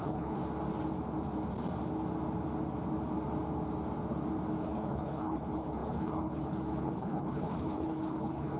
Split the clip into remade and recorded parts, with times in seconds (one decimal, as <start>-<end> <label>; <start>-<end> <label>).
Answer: 0.0-0.4 remade; 0.4-4.6 recorded; 4.6-8.6 remade